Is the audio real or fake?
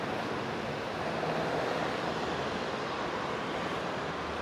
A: real